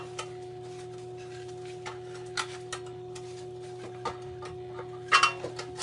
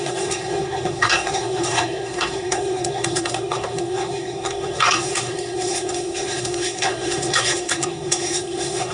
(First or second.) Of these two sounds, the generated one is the second